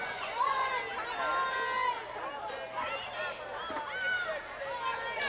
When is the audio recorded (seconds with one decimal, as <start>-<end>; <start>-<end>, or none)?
0.7-5.3

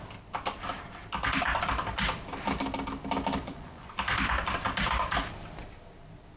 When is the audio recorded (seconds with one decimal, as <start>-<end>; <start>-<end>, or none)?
0.0-3.4; 3.9-6.4

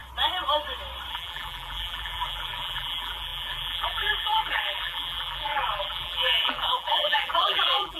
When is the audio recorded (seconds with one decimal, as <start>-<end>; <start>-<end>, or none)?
0.0-1.1

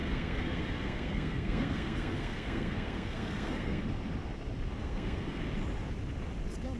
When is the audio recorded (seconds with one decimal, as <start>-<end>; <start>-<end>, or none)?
3.8-4.8; 5.4-6.8